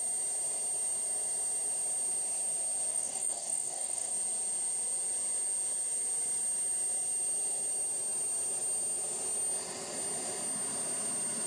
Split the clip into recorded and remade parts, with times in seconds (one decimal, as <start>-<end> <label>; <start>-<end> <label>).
0.0-2.9 recorded; 2.9-4.1 remade; 4.1-11.5 recorded

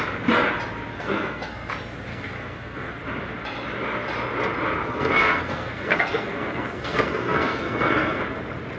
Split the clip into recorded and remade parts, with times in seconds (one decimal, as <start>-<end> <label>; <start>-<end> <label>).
0.0-0.9 recorded; 0.9-1.7 remade; 1.7-2.1 recorded; 2.1-2.9 remade; 2.9-4.8 recorded; 4.8-8.2 remade; 8.2-8.8 recorded

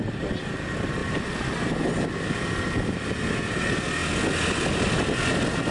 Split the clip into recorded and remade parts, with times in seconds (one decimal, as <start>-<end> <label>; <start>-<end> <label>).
0.0-5.7 recorded

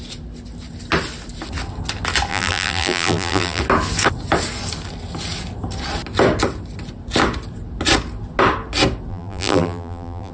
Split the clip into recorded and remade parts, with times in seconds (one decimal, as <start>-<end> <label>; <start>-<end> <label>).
0.0-2.3 recorded; 2.3-3.6 remade; 3.6-9.1 recorded; 9.1-10.3 remade